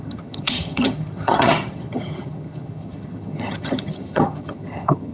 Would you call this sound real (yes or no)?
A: no